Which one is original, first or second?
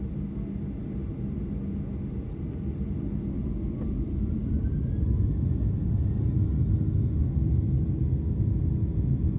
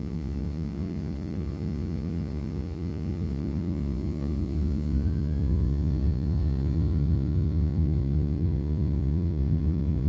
first